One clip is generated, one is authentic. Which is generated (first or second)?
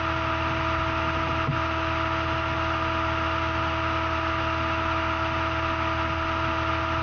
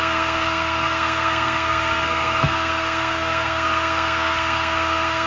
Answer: second